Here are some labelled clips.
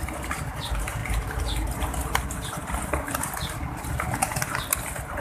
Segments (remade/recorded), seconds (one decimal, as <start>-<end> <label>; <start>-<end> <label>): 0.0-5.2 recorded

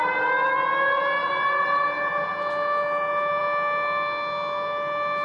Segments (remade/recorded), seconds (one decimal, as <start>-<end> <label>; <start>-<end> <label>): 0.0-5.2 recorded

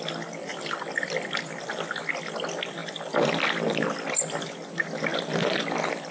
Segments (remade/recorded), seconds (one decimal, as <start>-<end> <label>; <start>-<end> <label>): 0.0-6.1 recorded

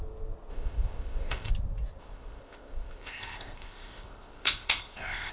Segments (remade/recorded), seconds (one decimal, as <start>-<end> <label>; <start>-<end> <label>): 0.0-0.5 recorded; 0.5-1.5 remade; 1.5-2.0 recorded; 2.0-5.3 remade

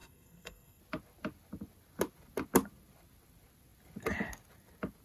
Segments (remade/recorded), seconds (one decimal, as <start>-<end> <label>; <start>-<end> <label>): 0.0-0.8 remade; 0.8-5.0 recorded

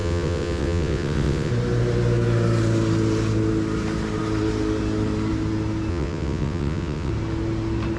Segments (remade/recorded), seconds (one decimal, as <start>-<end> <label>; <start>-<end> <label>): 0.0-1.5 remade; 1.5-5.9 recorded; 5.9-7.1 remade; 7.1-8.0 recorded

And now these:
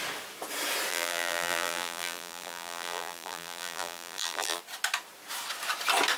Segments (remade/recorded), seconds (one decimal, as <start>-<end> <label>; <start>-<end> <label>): 0.0-0.9 recorded; 0.9-4.6 remade; 4.6-6.2 recorded